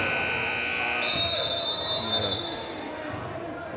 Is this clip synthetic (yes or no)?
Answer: no